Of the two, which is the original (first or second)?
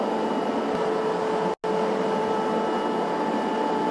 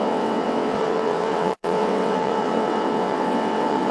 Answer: first